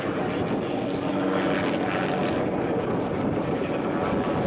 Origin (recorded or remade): recorded